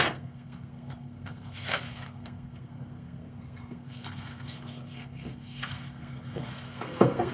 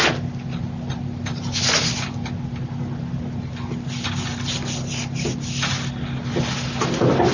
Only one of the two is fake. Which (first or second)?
first